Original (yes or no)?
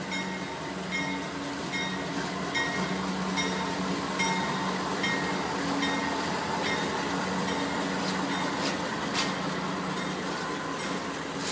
yes